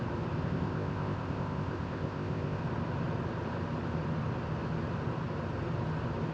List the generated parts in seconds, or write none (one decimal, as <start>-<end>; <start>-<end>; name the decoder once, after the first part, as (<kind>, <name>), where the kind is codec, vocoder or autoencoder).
0.4-2.6 (codec, ZipCodec)